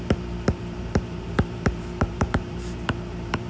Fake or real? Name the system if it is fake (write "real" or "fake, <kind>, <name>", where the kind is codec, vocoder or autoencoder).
fake, vocoder, BigVGAN v2